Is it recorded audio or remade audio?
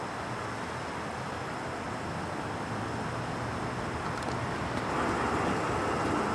recorded